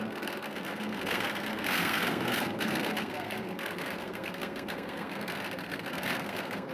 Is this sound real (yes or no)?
no